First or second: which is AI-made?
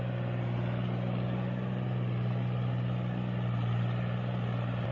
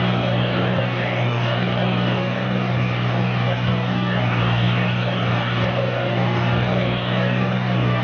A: second